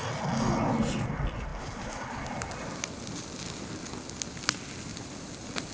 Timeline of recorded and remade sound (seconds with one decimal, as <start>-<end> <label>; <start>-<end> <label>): 0.0-1.5 recorded; 1.5-3.6 remade; 3.6-4.9 recorded; 4.9-5.7 remade